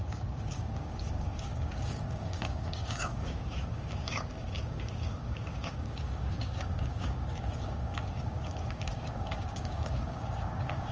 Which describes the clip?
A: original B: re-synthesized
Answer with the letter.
B